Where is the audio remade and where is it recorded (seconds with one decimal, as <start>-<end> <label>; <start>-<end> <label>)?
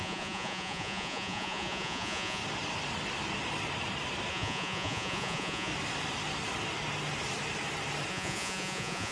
0.0-2.4 remade; 2.4-4.3 recorded; 4.3-5.7 remade; 5.7-8.1 recorded; 8.1-9.1 remade